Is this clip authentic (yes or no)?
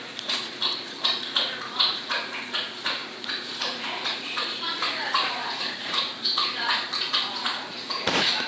no